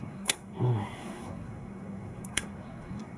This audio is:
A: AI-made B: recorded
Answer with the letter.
A